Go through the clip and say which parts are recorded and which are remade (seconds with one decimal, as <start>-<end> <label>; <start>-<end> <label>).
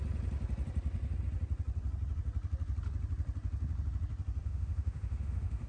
0.0-4.4 recorded; 4.4-5.7 remade